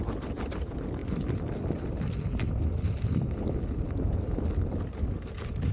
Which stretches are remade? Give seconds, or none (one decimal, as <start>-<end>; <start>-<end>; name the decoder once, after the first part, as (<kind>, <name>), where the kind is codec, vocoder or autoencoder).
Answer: 1.0-4.4 (vocoder, BigVGAN v2)